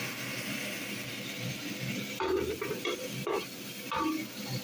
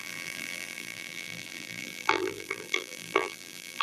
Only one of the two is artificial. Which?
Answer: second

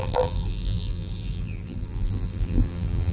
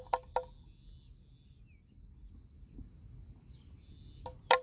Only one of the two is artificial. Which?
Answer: first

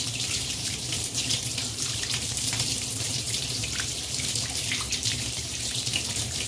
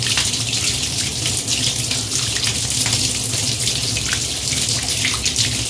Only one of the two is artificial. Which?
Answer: first